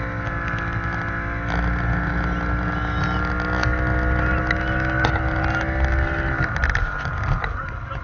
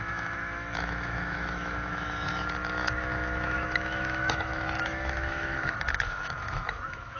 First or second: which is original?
first